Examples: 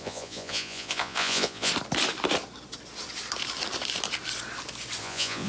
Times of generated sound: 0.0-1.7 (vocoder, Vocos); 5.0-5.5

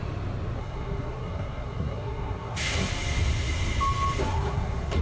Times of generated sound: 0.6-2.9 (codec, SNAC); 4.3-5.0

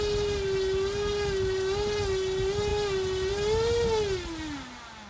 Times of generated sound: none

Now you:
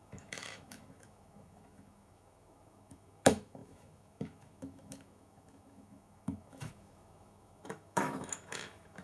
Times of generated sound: 0.0-9.0 (autoencoder, DAC-VAE)